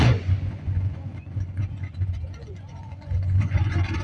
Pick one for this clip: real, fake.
fake